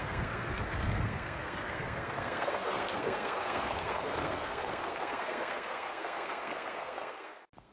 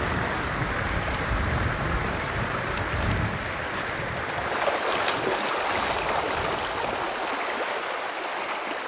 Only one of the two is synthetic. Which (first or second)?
first